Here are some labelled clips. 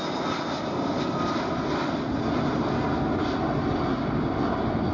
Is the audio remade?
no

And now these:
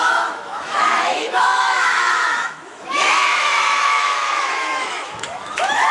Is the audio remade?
yes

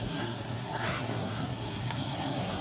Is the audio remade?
yes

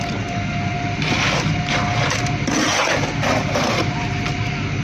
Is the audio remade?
no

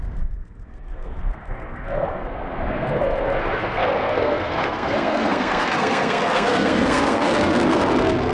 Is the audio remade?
yes